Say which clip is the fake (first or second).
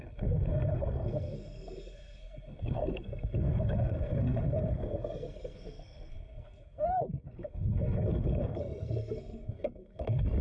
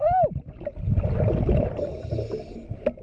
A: first